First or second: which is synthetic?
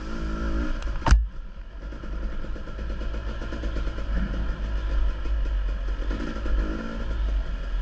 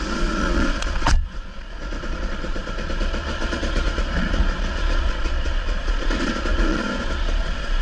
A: second